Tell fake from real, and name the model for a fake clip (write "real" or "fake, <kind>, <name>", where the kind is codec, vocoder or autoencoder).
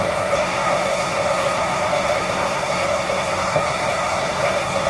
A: fake, codec, SNAC